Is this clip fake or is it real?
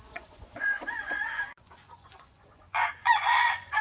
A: fake